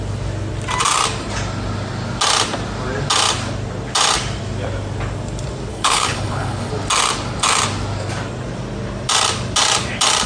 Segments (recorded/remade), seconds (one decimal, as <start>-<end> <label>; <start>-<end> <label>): 0.0-5.7 recorded; 5.7-6.7 remade; 6.7-10.3 recorded